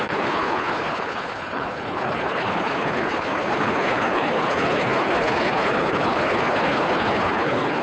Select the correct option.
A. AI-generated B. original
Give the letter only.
A